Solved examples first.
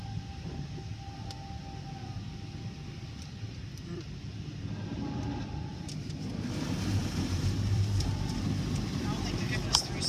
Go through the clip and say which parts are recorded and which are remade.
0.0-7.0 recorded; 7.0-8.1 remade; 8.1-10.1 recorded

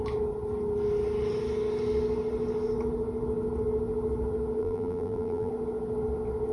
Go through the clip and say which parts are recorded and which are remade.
0.0-4.6 recorded; 4.6-5.5 remade; 5.5-6.5 recorded

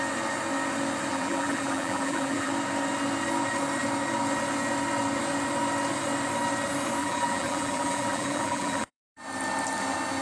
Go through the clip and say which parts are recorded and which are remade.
0.0-1.1 recorded; 1.1-2.5 remade; 2.5-7.0 recorded; 7.0-9.0 remade; 9.0-10.2 recorded